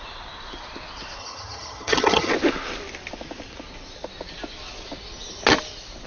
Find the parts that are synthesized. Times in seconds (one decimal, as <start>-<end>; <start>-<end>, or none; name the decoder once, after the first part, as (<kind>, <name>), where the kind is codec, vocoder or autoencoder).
1.2-2.3 (vocoder, HiFi-GAN)

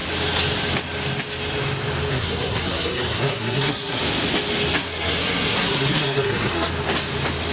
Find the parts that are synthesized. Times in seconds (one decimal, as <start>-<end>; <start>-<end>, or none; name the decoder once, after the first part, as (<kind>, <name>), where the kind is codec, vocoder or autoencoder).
2.1-4.0 (codec, SNAC); 4.7-6.7

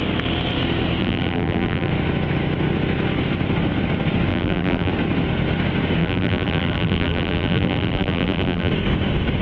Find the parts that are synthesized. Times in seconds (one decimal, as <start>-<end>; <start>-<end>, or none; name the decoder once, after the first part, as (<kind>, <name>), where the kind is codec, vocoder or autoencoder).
1.0-1.9 (vocoder, BigVGAN v2); 4.3-4.9; 6.0-8.7

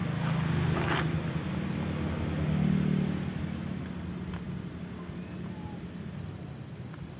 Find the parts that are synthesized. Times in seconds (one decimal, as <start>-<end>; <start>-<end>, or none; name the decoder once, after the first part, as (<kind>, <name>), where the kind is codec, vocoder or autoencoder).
none

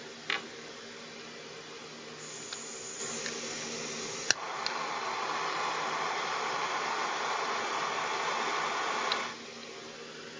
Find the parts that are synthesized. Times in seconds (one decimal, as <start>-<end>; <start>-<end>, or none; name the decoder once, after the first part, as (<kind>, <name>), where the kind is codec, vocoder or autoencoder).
none

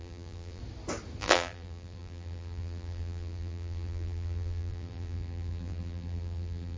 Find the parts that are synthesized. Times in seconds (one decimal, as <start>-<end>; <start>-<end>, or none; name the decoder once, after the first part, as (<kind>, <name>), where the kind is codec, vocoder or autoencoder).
0.0-0.6 (vocoder, BigVGAN v2); 1.2-6.8

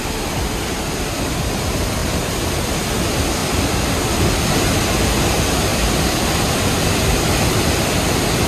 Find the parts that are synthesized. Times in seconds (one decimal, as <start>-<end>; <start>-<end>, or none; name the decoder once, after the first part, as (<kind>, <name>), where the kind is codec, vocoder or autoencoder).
3.4-4.5 (vocoder, BigVGAN v2); 5.7-7.2